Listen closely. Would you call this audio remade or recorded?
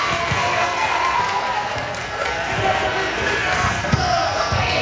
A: remade